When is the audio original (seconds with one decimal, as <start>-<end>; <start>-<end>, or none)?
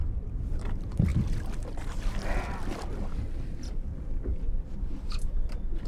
0.0-5.9